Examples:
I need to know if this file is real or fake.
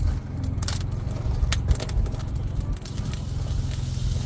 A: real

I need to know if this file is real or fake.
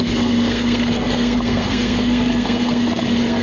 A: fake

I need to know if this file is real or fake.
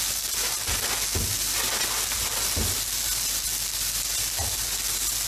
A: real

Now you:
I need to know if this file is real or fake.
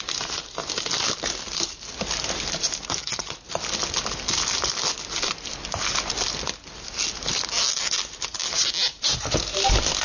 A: real